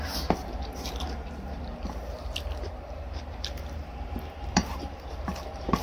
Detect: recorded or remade remade